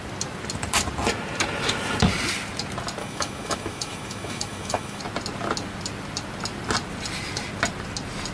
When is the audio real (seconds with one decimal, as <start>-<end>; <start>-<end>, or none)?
0.0-3.0; 5.0-8.3